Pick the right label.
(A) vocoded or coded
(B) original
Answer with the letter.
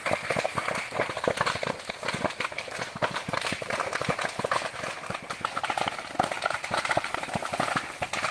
B